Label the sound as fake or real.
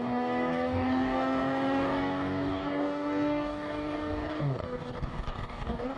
fake